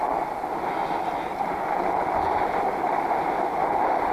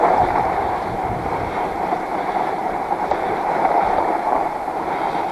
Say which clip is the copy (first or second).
second